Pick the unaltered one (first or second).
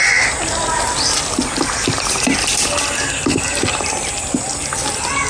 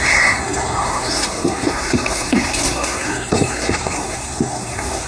first